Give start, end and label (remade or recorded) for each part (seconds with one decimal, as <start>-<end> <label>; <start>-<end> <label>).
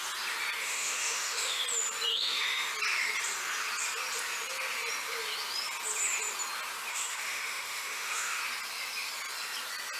0.0-0.6 recorded; 0.6-1.6 remade; 1.6-2.1 recorded; 2.1-2.7 remade; 2.7-6.9 recorded; 6.9-8.4 remade; 8.4-10.0 recorded